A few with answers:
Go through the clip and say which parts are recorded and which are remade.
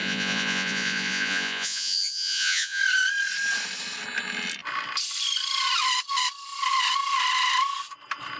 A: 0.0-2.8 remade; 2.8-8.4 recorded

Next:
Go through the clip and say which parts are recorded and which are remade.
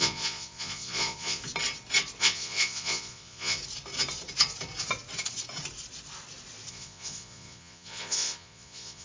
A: 0.0-1.4 remade; 1.4-2.2 recorded; 2.2-3.6 remade; 3.6-6.7 recorded; 6.7-9.0 remade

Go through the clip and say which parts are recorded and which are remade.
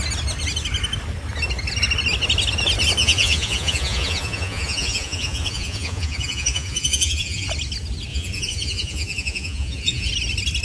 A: 0.0-3.0 recorded; 3.0-7.5 remade; 7.5-8.1 recorded; 8.1-10.1 remade; 10.1-10.6 recorded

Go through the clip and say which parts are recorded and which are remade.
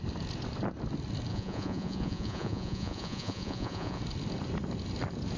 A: 0.0-1.3 recorded; 1.3-4.0 remade; 4.0-5.4 recorded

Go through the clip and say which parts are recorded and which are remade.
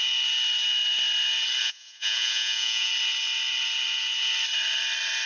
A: 0.0-1.6 recorded; 1.6-2.9 remade; 2.9-5.3 recorded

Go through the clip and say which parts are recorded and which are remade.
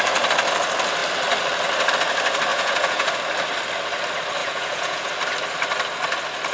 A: 0.0-2.5 recorded; 2.5-3.1 remade; 3.1-4.4 recorded; 4.4-5.1 remade; 5.1-6.5 recorded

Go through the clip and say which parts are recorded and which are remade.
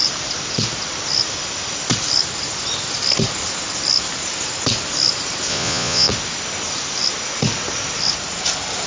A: 0.0-5.5 recorded; 5.5-6.1 remade; 6.1-8.9 recorded